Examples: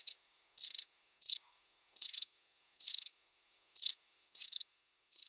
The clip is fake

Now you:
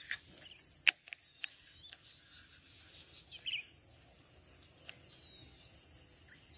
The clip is real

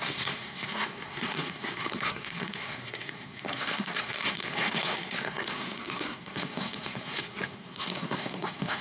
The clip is fake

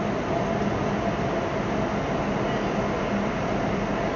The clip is real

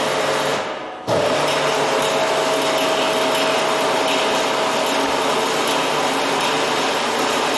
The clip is real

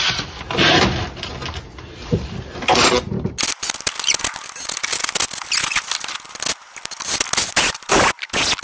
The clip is real